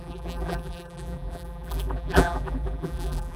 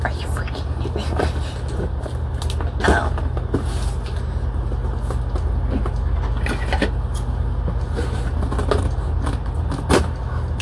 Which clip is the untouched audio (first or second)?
second